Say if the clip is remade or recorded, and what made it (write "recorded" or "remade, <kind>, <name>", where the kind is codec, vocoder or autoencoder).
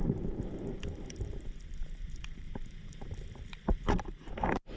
remade, vocoder, BigVGAN v2